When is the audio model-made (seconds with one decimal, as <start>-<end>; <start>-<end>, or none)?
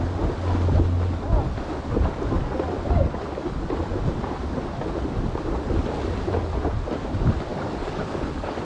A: 7.5-8.6